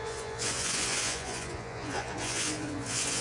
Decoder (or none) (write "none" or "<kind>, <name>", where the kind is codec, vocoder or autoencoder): vocoder, Vocos